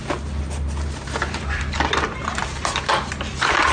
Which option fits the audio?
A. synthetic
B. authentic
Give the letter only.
B